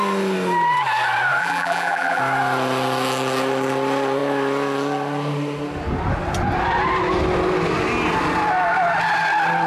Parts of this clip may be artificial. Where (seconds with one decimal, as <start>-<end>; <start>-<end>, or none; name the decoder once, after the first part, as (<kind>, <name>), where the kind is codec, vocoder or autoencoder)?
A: 1.4-2.2 (vocoder, BigVGAN v2)